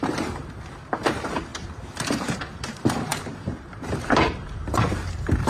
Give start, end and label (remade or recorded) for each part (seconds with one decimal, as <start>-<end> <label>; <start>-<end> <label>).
0.0-5.5 remade